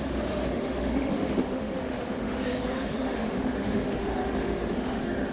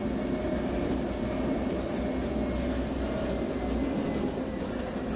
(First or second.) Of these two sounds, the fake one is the first